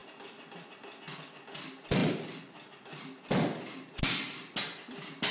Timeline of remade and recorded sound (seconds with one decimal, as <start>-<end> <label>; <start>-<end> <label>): 0.0-5.3 recorded